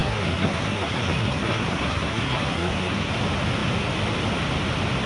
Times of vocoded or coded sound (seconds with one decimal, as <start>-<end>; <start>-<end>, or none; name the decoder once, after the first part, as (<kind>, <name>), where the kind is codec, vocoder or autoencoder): 0.0-3.1 (codec, SNAC)